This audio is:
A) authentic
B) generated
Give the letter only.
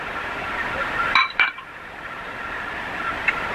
A